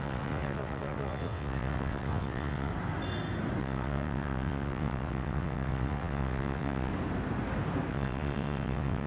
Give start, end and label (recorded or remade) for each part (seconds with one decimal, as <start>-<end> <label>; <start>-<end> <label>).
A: 0.0-2.7 remade; 2.7-3.6 recorded; 3.6-6.9 remade; 6.9-7.9 recorded; 7.9-9.1 remade